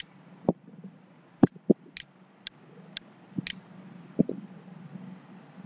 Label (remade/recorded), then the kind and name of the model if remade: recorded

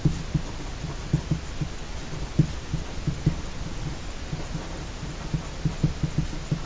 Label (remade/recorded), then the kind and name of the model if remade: recorded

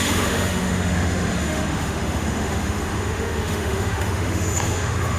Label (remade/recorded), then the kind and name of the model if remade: remade, autoencoder, DAC-VAE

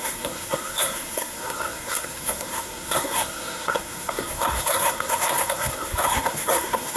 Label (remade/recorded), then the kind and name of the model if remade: remade, codec, SNAC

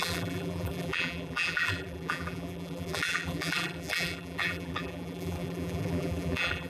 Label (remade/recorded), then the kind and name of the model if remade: remade, vocoder, BigVGAN v2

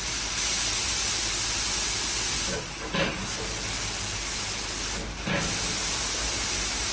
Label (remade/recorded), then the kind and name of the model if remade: recorded